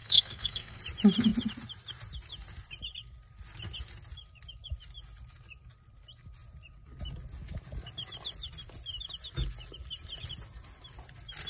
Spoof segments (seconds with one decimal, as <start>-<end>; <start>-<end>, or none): 0.0-0.8